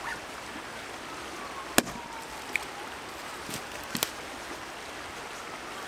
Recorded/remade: recorded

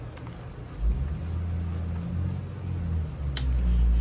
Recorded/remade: recorded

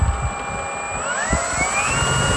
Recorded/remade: recorded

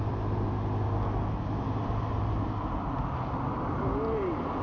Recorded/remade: recorded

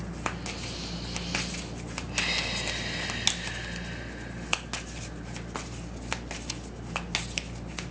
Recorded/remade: recorded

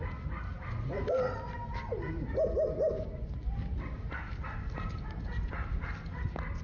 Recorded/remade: recorded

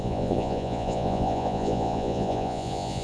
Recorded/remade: remade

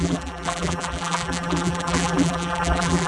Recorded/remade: remade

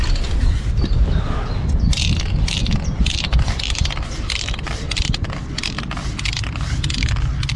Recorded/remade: recorded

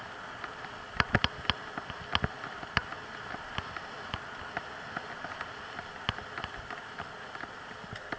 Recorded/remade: recorded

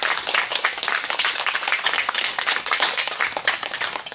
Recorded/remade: remade